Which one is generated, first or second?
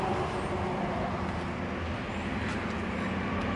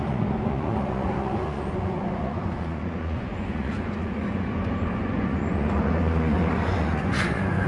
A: second